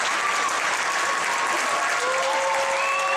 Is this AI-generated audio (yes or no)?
no